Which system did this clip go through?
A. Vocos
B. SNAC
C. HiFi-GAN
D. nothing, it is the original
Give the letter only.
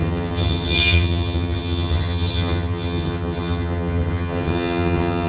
C